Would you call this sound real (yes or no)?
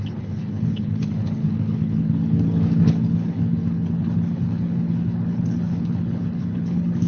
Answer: no